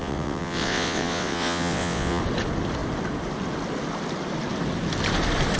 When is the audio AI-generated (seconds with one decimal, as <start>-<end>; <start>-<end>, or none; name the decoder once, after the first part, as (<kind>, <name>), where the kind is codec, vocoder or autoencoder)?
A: 0.0-2.2 (vocoder, WaveNeXt)